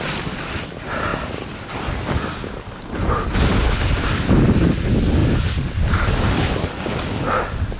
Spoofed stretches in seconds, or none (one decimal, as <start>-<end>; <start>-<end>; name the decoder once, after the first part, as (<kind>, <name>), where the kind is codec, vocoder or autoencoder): 5.2-7.2 (vocoder, BigVGAN v2)